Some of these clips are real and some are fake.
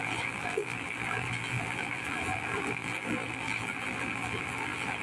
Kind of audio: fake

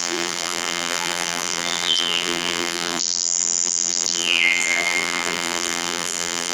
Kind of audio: fake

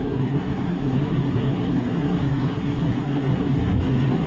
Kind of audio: fake